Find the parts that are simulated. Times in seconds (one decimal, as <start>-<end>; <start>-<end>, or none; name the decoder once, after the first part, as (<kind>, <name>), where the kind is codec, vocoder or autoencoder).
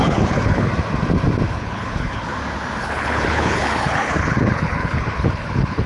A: 0.0-0.7 (codec, HILCodec); 1.5-2.3; 2.8-5.9